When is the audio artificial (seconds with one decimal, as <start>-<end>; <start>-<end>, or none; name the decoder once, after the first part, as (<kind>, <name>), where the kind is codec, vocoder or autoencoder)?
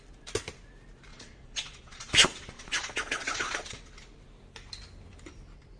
1.1-3.8 (vocoder, Vocos)